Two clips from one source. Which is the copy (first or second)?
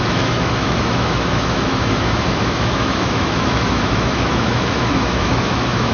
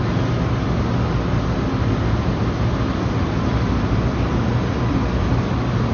first